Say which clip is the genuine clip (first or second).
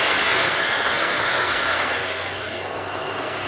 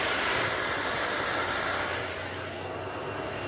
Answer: second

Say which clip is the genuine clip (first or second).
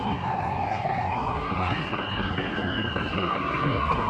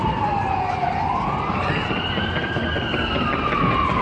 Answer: second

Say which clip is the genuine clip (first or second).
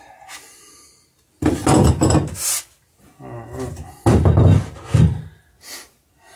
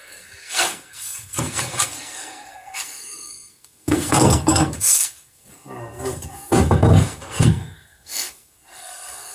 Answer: first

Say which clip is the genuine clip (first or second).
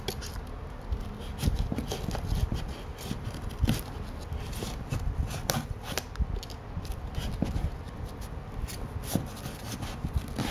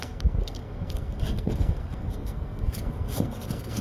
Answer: first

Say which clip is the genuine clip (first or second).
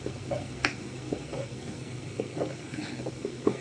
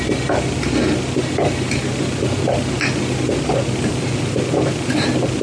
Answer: second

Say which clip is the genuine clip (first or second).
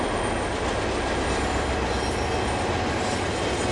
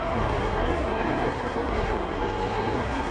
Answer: first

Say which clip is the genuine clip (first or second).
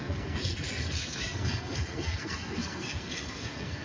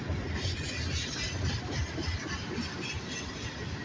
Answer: second